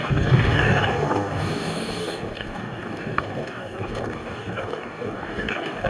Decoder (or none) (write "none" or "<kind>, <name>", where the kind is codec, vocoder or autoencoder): codec, DAC